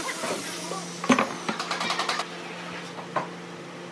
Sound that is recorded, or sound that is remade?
recorded